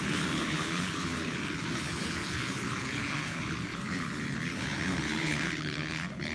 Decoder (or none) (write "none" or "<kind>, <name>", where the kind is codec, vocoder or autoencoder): codec, HILCodec